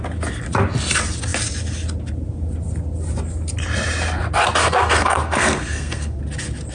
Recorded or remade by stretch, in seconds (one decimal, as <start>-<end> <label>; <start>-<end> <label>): 0.0-4.6 recorded; 4.6-6.2 remade; 6.2-6.7 recorded

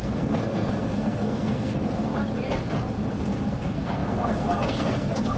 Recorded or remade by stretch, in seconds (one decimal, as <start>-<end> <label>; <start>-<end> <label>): 0.0-2.2 remade; 2.2-3.1 recorded; 3.1-5.4 remade

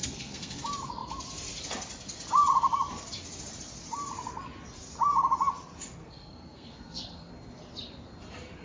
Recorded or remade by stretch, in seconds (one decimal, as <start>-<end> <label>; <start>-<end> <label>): 0.0-0.6 remade; 0.6-6.0 recorded; 6.0-7.3 remade; 7.3-8.6 recorded

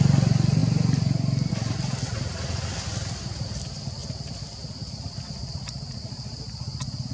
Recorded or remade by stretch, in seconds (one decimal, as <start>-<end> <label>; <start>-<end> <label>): 0.0-7.1 recorded

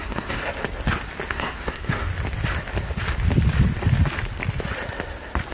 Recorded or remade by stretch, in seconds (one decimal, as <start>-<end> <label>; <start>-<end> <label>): 0.0-0.4 remade; 0.4-1.3 recorded; 1.3-2.1 remade; 2.1-5.5 recorded

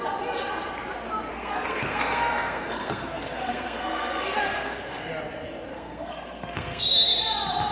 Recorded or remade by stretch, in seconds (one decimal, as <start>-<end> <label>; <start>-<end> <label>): 0.0-1.3 recorded; 1.3-5.1 remade; 5.1-5.7 recorded; 5.7-6.8 remade; 6.8-7.7 recorded

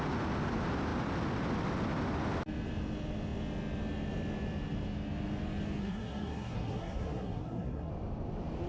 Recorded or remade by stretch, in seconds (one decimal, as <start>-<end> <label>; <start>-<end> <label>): 0.0-5.8 recorded; 5.8-7.9 remade; 7.9-8.7 recorded

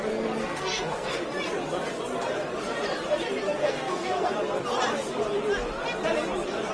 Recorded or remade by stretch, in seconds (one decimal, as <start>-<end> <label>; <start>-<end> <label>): 0.0-0.4 recorded; 0.4-1.2 remade; 1.2-3.6 recorded; 3.6-4.3 remade; 4.3-6.7 recorded